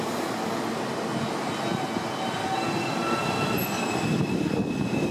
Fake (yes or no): no